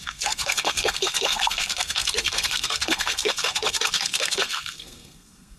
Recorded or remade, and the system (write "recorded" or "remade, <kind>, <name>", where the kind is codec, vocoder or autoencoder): remade, codec, SNAC